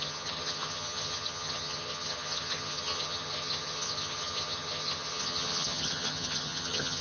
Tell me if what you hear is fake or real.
fake